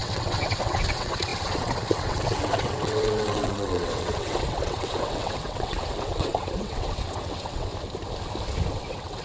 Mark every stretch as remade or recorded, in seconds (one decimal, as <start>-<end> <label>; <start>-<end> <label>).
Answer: 0.0-7.7 remade; 7.7-8.7 recorded; 8.7-9.2 remade